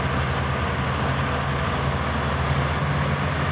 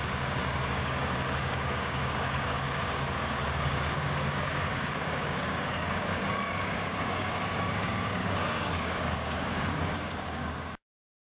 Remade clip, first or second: second